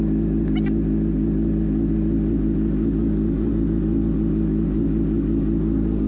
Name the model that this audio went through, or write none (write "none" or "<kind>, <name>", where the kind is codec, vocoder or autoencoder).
none